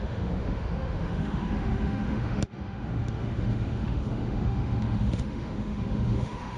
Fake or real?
fake